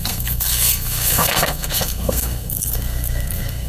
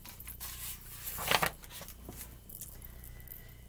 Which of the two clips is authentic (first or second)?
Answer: second